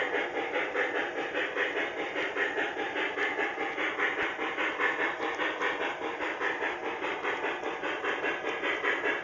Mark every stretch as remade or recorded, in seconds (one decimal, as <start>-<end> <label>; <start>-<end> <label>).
0.0-9.2 recorded